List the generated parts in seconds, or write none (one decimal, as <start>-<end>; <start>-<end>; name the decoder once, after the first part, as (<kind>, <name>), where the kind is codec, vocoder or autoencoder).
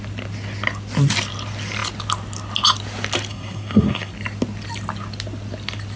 3.3-4.1 (codec, SNAC)